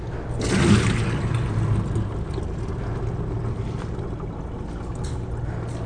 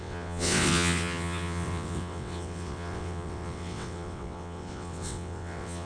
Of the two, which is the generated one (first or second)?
second